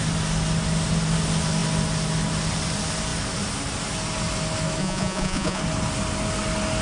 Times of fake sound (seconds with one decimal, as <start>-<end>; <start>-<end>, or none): 4.8-5.6